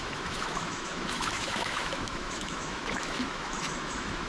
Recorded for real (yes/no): no